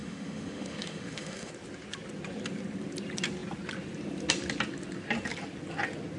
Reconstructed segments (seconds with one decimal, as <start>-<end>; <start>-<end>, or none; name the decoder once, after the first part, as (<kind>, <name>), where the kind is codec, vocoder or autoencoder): 0.0-1.5 (autoencoder, DAC-VAE)